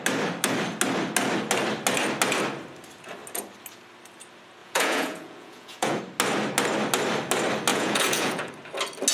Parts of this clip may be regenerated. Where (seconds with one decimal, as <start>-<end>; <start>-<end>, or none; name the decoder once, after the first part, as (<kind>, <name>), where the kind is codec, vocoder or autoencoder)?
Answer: 4.6-6.0 (vocoder, Vocos); 7.7-8.5